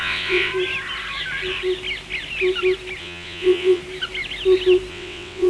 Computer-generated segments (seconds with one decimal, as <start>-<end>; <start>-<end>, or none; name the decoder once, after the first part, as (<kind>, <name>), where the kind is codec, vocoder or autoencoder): 0.0-0.5 (vocoder, WaveNeXt); 3.0-3.8; 4.9-5.5